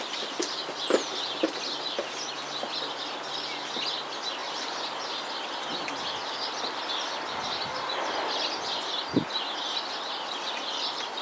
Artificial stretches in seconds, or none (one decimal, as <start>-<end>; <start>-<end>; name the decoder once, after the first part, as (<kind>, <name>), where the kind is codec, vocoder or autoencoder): 4.4-5.1 (vocoder, BigVGAN v2)